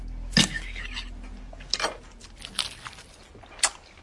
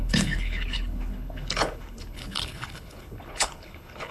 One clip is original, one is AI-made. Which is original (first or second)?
first